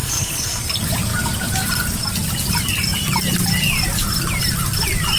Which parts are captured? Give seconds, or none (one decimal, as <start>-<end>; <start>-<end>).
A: 0.6-5.2